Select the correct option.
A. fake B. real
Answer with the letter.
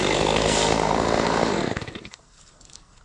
A